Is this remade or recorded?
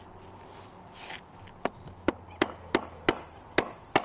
recorded